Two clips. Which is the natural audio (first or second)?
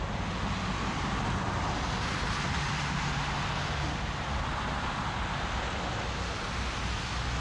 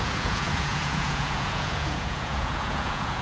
first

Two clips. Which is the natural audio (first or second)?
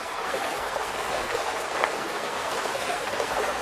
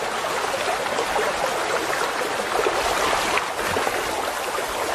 second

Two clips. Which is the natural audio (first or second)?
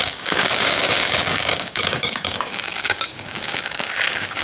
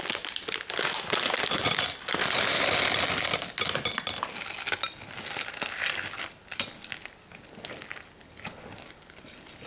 second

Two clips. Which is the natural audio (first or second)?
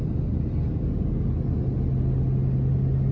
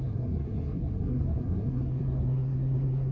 first